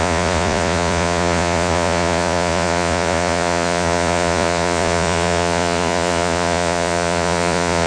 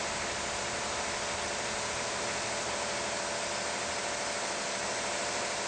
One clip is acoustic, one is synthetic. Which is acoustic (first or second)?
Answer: second